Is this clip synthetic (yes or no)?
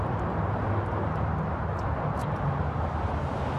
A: no